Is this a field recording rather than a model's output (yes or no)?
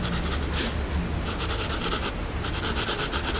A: yes